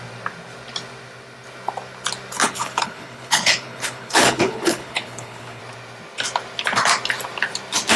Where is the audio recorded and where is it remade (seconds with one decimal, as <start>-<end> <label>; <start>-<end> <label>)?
0.0-2.4 recorded; 2.4-5.6 remade; 5.6-8.0 recorded